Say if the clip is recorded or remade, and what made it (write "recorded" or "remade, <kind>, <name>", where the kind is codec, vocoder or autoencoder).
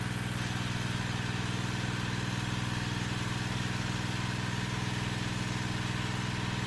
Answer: recorded